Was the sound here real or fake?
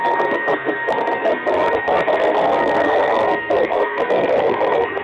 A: fake